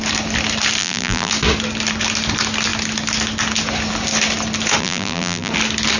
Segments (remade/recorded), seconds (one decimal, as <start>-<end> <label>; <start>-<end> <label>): 0.0-0.8 recorded; 0.8-1.3 remade; 1.3-4.8 recorded; 4.8-5.5 remade; 5.5-6.0 recorded